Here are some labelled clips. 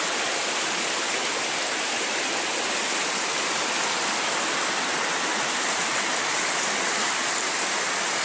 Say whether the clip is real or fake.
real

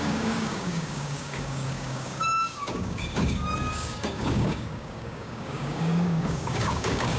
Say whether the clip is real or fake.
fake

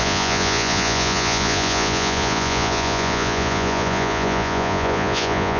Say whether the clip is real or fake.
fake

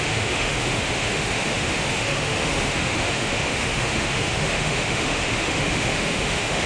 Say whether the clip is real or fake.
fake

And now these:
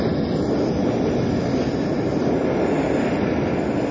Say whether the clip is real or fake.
real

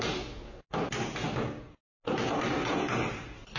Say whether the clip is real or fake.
real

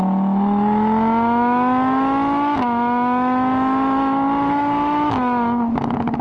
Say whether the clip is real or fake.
fake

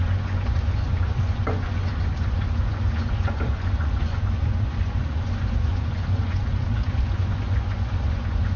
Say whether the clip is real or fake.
fake